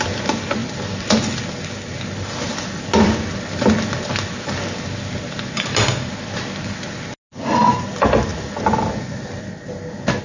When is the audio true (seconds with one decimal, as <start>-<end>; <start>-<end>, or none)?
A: 0.0-10.2